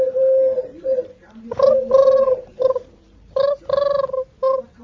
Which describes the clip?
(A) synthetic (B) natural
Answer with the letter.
A